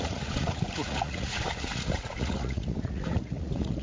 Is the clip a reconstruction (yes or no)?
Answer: yes